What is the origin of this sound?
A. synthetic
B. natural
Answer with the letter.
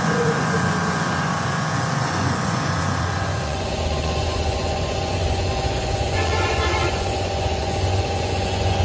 A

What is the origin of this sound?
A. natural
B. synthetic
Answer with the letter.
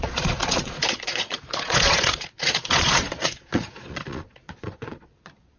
B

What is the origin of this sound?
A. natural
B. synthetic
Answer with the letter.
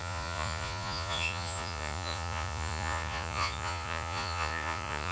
B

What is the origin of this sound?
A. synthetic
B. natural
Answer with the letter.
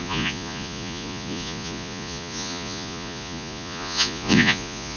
A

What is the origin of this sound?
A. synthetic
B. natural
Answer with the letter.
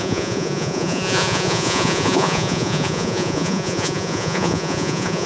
A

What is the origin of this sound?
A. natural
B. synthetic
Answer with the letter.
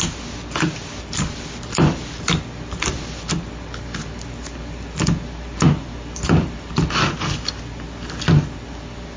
A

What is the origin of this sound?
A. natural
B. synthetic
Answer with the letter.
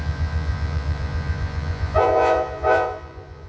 B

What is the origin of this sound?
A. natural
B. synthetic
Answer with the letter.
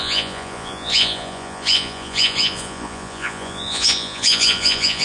B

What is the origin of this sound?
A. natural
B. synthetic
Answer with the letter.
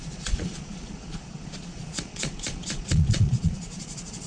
B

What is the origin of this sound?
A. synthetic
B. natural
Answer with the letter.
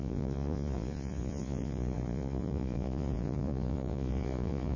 A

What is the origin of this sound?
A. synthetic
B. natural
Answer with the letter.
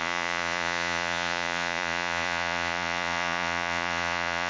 A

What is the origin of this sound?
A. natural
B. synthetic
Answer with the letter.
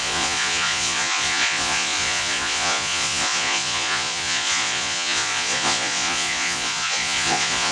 B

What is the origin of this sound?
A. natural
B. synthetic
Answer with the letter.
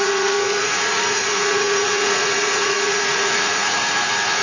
B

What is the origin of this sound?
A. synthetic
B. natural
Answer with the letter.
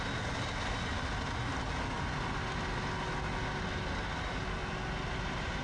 B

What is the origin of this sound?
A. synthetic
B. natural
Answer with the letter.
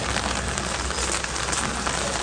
B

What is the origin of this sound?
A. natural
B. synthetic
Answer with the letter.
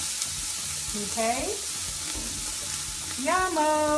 A